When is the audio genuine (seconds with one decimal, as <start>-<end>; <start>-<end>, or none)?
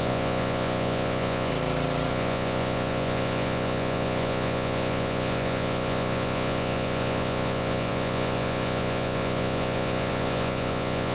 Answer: 1.5-2.1